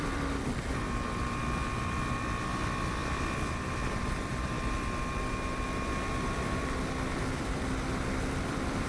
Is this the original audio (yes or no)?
no